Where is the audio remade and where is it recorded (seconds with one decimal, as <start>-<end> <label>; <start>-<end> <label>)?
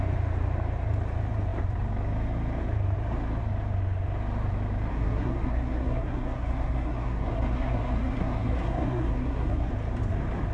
0.0-4.9 recorded; 4.9-9.7 remade; 9.7-10.5 recorded